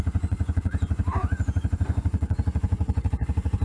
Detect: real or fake fake